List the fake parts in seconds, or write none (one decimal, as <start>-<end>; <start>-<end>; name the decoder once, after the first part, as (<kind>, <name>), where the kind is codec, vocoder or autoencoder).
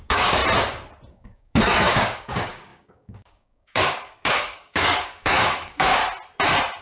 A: 0.0-0.4 (codec, DAC); 1.1-6.0